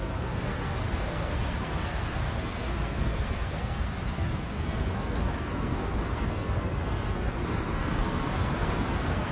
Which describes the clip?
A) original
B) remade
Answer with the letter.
B